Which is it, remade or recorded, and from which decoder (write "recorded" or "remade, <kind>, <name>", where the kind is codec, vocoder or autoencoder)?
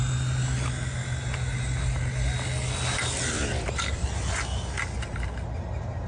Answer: recorded